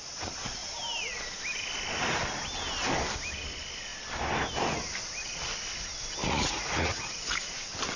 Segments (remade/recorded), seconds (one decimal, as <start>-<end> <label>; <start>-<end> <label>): 0.0-6.2 recorded; 6.2-7.6 remade; 7.6-8.0 recorded